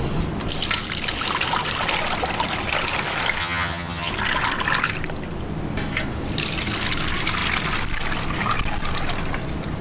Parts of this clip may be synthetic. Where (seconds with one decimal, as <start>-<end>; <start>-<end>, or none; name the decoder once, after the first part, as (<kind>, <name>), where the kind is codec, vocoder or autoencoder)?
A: 3.4-4.1 (vocoder, HiFi-GAN)